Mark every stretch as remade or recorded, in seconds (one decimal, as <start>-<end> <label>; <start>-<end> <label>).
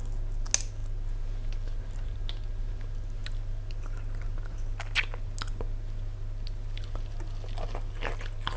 0.0-8.6 recorded